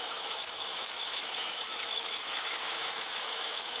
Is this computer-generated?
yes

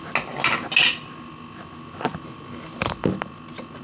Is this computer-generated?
no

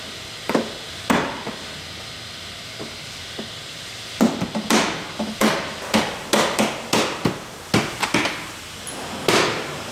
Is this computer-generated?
no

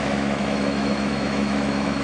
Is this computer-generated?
yes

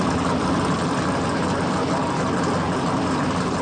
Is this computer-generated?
no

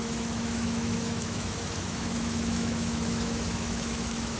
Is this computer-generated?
yes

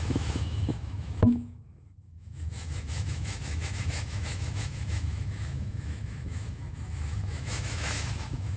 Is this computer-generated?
yes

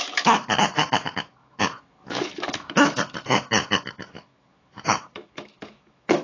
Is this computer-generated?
yes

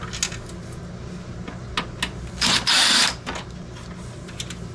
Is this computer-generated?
no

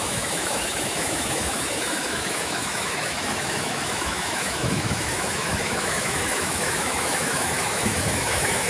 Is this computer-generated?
yes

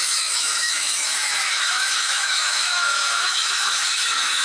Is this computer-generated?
yes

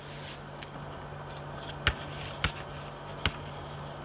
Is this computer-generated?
no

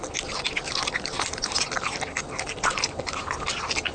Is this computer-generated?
no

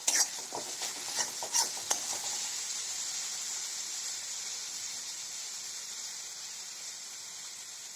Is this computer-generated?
no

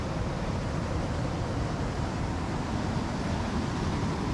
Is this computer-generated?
no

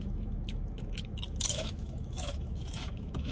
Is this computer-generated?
yes